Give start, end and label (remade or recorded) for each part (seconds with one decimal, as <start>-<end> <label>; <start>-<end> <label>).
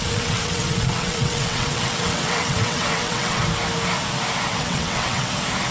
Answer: 0.0-3.4 remade; 3.4-4.5 recorded; 4.5-5.3 remade; 5.3-5.7 recorded